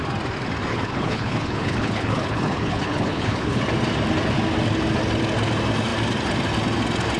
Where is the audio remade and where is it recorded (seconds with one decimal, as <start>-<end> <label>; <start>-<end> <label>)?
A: 0.0-0.7 recorded; 0.7-3.6 remade; 3.6-7.2 recorded